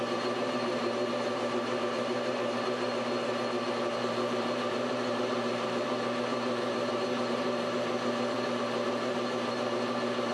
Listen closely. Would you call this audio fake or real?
fake